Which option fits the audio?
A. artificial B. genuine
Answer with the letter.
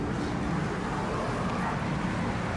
B